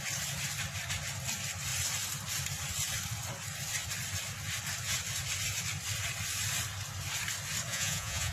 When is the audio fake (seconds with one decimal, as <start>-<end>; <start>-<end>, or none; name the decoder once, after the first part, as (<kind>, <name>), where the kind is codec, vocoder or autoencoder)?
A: 7.7-8.3 (vocoder, Vocos)